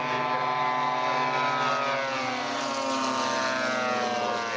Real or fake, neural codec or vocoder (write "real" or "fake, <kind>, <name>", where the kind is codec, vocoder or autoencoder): real